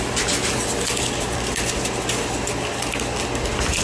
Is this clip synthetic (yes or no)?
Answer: no